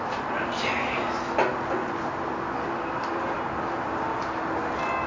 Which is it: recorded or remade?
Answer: recorded